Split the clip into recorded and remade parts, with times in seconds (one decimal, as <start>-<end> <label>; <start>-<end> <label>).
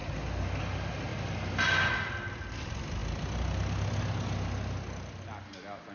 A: 0.0-5.9 recorded